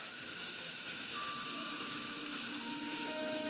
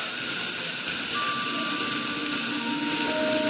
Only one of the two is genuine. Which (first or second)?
second